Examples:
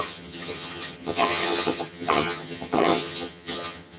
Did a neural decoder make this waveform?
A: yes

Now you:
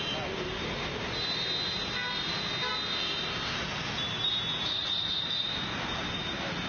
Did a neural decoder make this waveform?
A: no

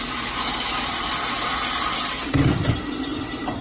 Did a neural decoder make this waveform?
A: no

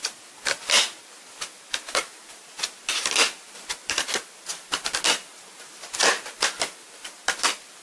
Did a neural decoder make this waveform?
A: no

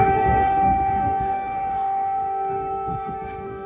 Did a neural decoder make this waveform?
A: yes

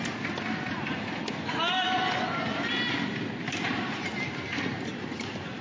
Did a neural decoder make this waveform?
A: no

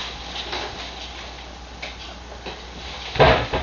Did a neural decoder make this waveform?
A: yes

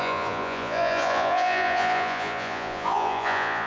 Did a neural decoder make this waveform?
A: yes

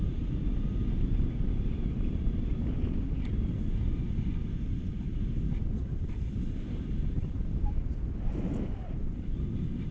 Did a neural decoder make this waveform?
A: no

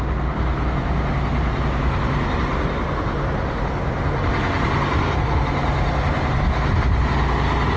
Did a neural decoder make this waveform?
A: no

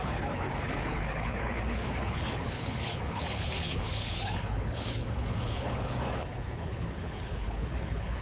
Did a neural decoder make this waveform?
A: yes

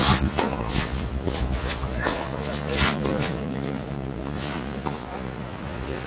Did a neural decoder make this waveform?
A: yes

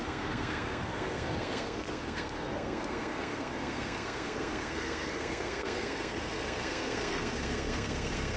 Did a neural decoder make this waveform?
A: yes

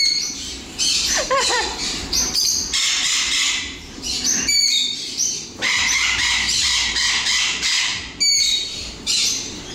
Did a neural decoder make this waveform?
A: yes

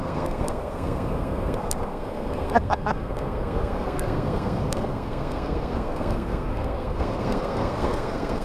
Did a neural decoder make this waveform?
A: yes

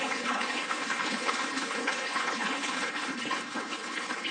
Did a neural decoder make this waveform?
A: yes